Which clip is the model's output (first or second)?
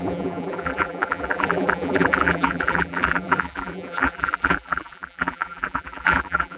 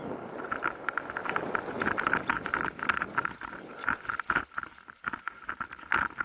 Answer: first